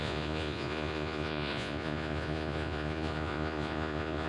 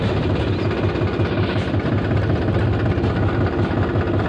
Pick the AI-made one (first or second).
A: first